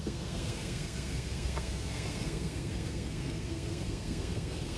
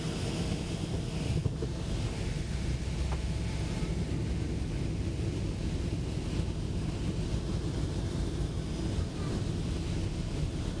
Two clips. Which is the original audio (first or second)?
second